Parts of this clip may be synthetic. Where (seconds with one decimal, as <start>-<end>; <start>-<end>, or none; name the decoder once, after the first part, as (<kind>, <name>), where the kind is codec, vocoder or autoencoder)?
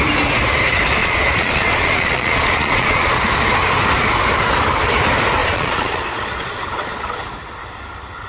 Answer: 1.0-3.2 (vocoder, Vocos); 5.4-7.1